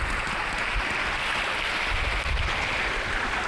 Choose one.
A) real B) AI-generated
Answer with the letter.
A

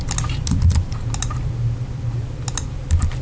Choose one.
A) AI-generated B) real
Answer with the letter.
B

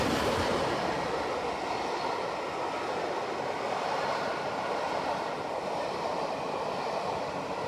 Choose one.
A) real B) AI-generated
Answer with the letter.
A